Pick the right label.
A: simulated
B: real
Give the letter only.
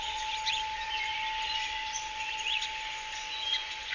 A